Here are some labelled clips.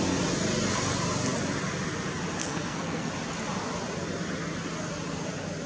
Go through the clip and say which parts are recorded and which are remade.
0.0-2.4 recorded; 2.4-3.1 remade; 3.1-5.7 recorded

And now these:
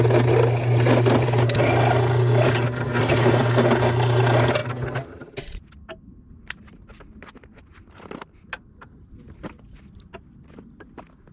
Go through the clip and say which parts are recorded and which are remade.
0.0-11.3 recorded

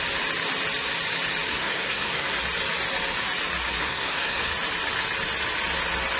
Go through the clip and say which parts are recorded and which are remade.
0.0-1.5 recorded; 1.5-2.4 remade; 2.4-3.8 recorded; 3.8-4.5 remade; 4.5-6.2 recorded

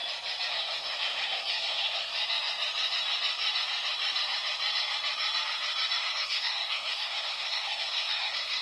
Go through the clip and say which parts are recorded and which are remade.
0.0-0.5 recorded; 0.5-2.1 remade; 2.1-6.0 recorded; 6.0-8.6 remade

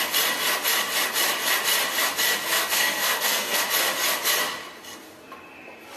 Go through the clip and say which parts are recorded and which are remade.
0.0-2.4 recorded; 2.4-3.6 remade; 3.6-6.0 recorded

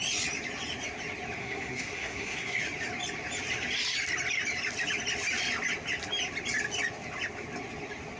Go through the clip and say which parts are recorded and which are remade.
0.0-1.4 recorded; 1.4-2.6 remade; 2.6-8.2 recorded

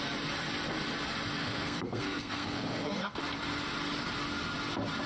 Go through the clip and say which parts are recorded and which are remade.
0.0-1.4 recorded; 1.4-3.2 remade; 3.2-5.1 recorded